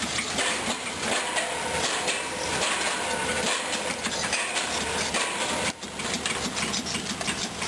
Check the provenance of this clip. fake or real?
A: real